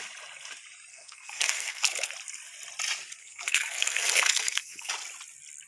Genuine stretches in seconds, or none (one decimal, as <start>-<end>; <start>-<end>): 0.0-0.9; 2.1-3.2; 4.9-5.7